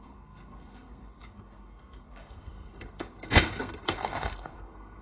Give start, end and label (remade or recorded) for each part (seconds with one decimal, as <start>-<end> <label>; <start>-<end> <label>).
0.0-5.0 remade